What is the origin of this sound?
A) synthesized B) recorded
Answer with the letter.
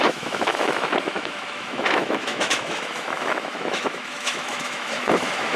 A